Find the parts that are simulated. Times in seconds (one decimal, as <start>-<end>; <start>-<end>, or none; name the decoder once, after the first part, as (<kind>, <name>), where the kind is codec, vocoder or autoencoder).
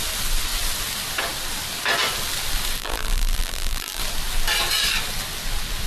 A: 2.8-4.0 (vocoder, BigVGAN v2)